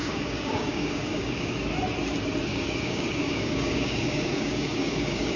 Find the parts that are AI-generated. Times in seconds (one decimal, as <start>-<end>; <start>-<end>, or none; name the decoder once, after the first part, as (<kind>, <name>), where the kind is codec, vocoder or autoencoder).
0.0-1.5 (codec, DAC); 2.5-5.4

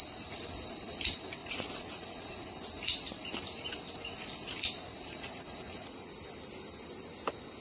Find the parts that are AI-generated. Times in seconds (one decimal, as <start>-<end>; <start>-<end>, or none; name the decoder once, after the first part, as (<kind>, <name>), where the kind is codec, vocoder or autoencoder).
1.4-2.5 (vocoder, Vocos); 4.9-6.1

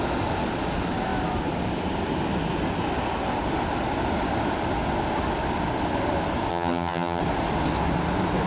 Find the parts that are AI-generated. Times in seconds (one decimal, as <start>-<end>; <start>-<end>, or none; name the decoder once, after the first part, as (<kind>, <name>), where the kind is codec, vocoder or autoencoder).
6.5-7.2 (vocoder, HiFi-GAN)